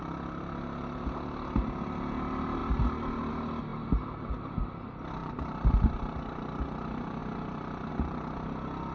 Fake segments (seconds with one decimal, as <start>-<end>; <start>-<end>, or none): 5.2-6.2

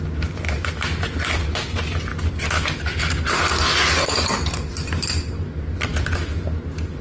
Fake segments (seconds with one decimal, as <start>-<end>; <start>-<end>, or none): none

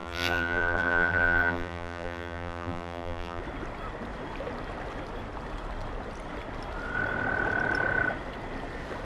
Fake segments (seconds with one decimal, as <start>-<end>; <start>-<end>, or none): 0.0-3.4

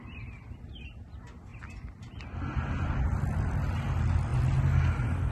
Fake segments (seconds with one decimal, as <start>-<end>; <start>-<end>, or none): none